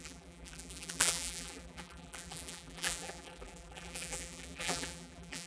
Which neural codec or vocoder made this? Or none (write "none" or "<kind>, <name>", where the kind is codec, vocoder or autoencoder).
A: vocoder, BigVGAN v2